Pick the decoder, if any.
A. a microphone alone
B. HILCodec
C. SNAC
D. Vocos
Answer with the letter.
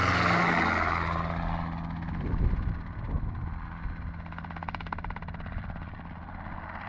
A